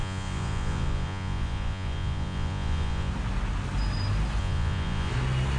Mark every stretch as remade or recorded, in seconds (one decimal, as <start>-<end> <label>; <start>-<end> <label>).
0.0-3.1 remade; 3.1-4.4 recorded; 4.4-5.1 remade; 5.1-5.6 recorded